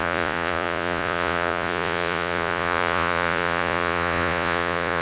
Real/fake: fake